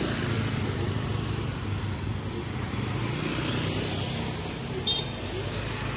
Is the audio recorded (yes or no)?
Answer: yes